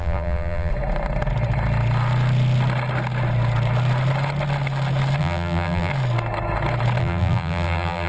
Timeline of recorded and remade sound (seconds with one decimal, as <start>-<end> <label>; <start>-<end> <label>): 0.0-0.7 remade; 0.7-5.2 recorded; 5.2-5.9 remade; 5.9-7.0 recorded; 7.0-8.1 remade